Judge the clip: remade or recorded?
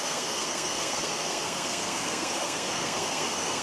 remade